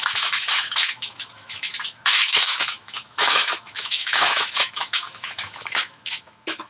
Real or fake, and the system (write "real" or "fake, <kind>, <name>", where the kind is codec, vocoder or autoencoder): fake, autoencoder, DAC-VAE